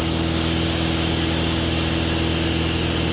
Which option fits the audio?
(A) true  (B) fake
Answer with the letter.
A